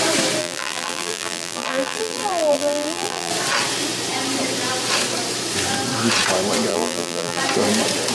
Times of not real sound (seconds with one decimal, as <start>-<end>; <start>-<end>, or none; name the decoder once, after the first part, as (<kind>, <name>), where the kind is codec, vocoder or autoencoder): 0.4-3.3 (vocoder, BigVGAN v2); 6.7-7.4